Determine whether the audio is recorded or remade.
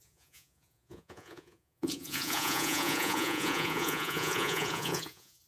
remade